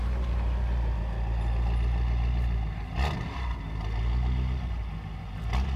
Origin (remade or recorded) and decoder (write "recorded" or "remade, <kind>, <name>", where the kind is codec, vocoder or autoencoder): recorded